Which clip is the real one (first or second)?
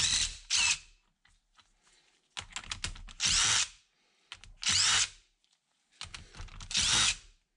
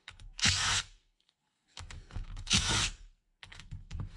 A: first